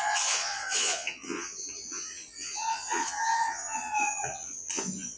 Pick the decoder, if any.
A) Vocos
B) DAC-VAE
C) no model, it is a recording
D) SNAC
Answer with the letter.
A